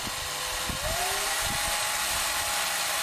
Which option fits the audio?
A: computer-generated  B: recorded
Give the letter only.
B